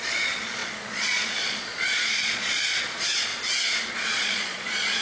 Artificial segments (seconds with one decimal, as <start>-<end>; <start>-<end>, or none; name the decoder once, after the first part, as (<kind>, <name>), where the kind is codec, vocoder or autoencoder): 0.0-3.3 (vocoder, Vocos); 3.9-5.0